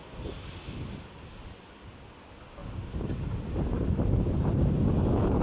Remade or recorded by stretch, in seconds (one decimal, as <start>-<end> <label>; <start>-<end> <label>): 0.0-5.4 recorded